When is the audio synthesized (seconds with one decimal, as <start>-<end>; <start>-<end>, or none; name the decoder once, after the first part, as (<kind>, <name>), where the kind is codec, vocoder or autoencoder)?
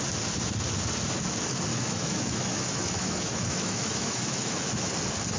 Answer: 1.7-4.9 (autoencoder, DAC-VAE)